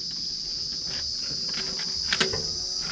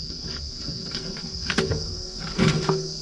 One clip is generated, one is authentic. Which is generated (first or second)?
second